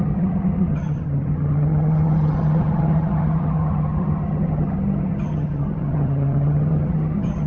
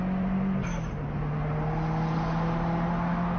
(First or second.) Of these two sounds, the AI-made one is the first